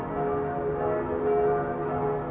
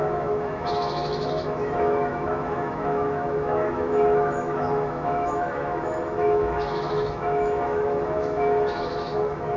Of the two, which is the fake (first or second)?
second